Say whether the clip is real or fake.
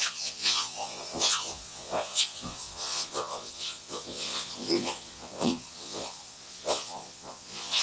fake